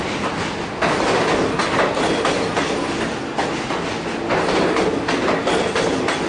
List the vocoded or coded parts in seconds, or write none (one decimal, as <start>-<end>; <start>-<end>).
none